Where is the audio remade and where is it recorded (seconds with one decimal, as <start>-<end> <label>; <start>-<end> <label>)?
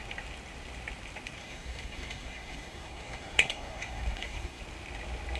0.0-1.4 recorded; 1.4-4.6 remade; 4.6-5.4 recorded